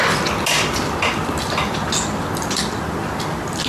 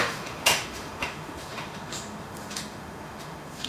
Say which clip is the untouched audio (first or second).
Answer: first